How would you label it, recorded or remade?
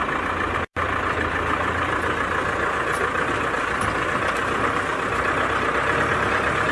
remade